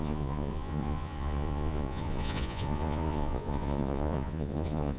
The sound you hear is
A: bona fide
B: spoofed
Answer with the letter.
B